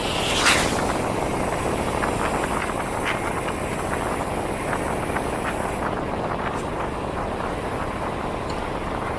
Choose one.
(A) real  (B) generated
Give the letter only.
A